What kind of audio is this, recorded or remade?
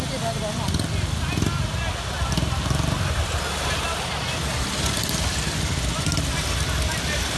recorded